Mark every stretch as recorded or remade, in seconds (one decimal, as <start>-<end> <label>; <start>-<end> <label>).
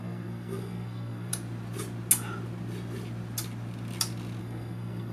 0.0-1.3 remade; 1.3-4.4 recorded; 4.4-5.1 remade